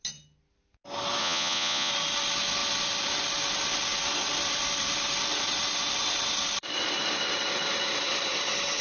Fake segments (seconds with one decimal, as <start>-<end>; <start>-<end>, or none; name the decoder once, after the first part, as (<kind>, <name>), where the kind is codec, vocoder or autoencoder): 1.2-1.9 (vocoder, Vocos)